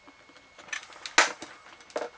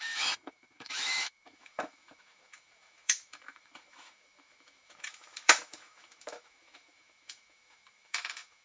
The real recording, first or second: first